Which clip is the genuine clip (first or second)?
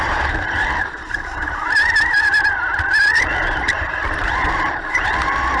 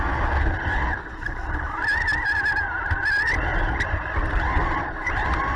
second